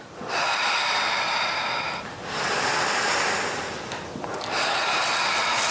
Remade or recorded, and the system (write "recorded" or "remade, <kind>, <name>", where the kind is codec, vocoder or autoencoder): recorded